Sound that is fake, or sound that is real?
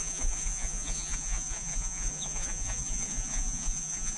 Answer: fake